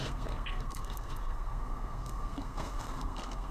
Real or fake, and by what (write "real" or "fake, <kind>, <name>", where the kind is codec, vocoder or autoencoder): fake, codec, SNAC